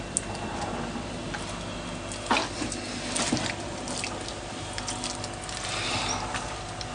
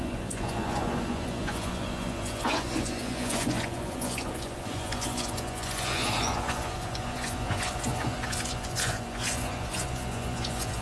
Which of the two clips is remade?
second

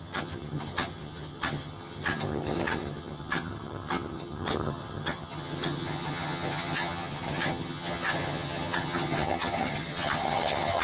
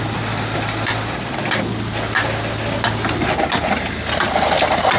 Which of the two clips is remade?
first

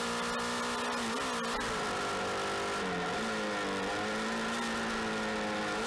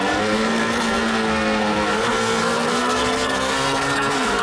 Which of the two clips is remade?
second